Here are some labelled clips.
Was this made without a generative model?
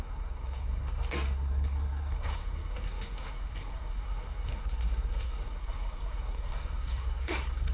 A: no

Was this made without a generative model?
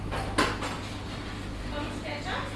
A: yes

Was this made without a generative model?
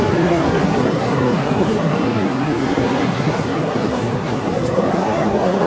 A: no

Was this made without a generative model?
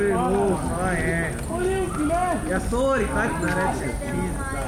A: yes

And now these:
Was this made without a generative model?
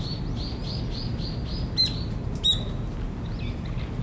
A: yes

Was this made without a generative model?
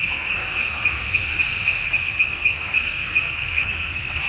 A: no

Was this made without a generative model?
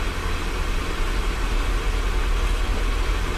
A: yes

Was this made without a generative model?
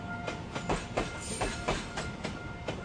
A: yes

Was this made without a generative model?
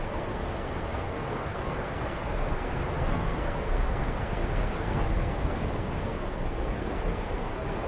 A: no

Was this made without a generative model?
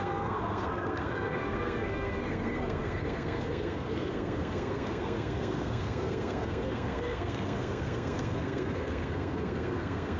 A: no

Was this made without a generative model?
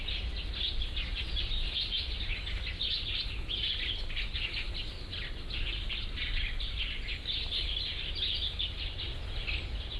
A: yes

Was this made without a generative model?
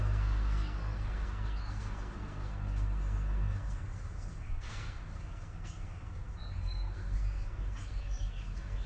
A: no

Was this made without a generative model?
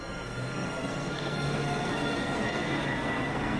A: no